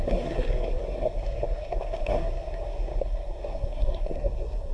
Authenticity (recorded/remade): remade